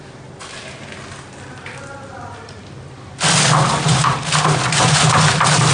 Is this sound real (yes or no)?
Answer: yes